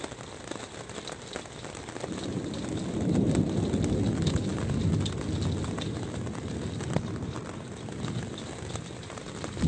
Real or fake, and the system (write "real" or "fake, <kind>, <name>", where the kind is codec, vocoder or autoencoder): real